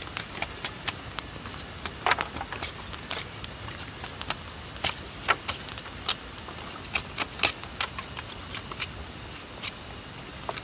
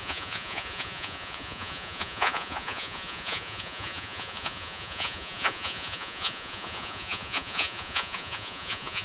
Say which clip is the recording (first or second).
first